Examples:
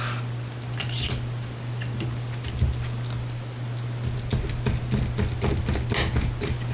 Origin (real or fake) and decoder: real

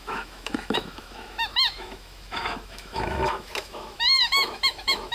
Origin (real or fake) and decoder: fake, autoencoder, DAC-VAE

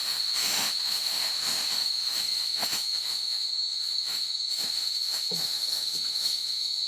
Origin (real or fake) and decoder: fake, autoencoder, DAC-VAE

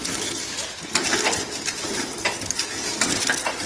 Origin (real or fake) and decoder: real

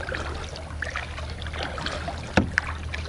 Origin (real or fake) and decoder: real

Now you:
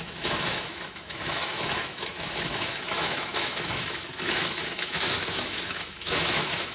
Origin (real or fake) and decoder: fake, autoencoder, DAC-VAE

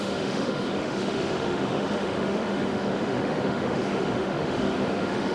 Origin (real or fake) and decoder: fake, autoencoder, DAC-VAE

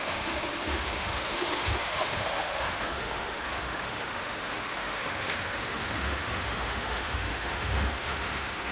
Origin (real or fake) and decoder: fake, autoencoder, DAC-VAE